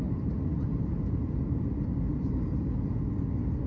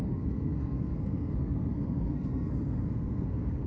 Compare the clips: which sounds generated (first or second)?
second